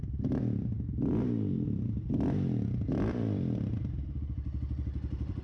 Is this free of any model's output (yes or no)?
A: no